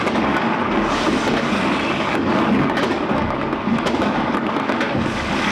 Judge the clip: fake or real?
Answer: fake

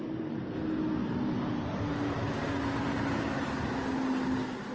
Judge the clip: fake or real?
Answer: real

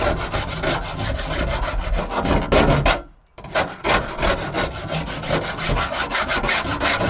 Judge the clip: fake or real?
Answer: real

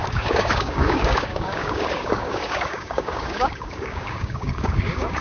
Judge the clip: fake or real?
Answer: fake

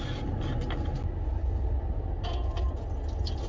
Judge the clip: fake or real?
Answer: real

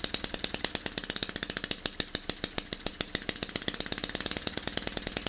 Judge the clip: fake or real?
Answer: real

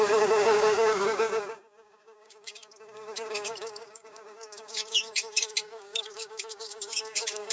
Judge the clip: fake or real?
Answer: fake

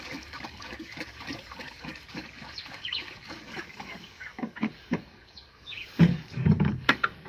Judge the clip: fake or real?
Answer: fake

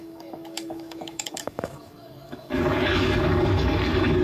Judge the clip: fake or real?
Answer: fake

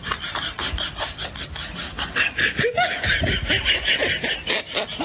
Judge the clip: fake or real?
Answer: real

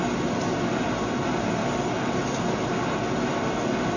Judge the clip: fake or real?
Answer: real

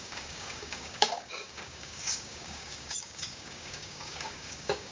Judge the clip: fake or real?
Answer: fake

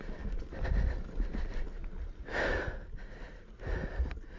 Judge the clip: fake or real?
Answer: real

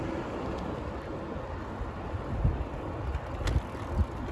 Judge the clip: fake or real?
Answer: real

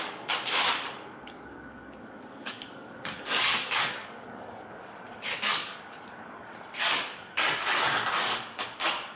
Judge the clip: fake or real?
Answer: fake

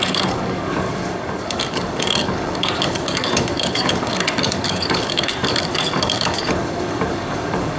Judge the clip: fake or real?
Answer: fake